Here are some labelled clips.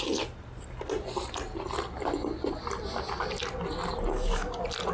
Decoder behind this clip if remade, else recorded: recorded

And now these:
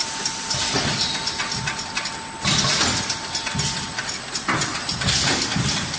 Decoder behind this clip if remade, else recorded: recorded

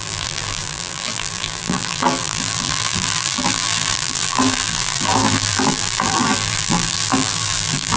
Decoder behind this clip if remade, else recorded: remade, vocoder, BigVGAN v2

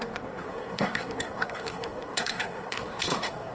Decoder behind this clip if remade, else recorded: remade, codec, SNAC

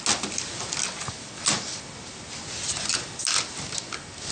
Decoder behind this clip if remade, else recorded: recorded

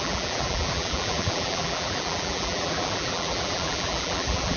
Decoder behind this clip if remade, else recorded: remade, vocoder, BigVGAN v2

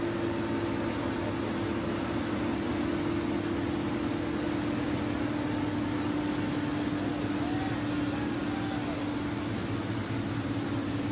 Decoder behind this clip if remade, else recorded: recorded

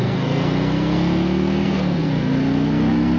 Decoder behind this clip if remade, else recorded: remade, codec, SNAC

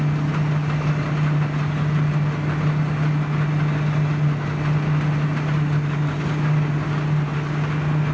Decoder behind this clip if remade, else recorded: recorded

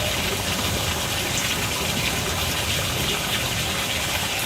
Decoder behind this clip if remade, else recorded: recorded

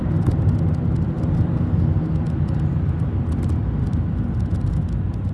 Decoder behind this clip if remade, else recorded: recorded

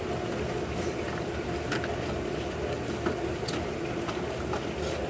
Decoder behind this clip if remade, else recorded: recorded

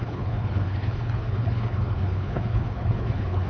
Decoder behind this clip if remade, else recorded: remade, codec, HILCodec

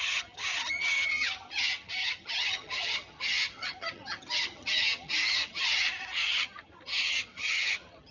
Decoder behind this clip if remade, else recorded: remade, vocoder, HiFi-GAN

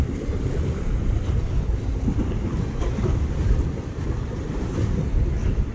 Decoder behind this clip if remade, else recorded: remade, vocoder, BigVGAN v2